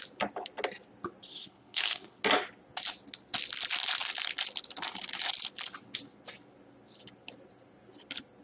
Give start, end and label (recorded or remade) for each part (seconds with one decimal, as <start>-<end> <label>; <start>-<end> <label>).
0.0-1.3 recorded; 1.3-2.2 remade; 2.2-8.4 recorded